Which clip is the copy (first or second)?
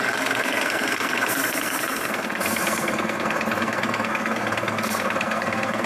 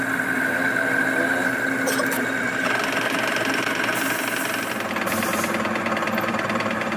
first